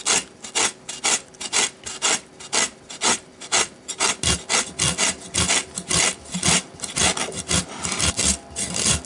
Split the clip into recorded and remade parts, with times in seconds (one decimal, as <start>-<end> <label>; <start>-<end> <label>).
0.0-9.1 recorded